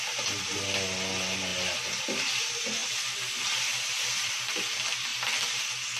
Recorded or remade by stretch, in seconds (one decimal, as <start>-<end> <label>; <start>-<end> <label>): 0.0-6.0 recorded